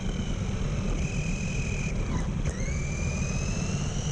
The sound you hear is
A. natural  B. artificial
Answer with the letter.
A